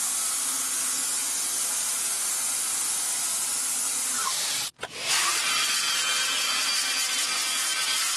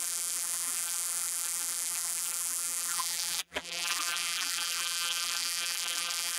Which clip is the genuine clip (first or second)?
first